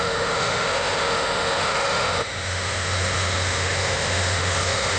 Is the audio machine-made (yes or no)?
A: yes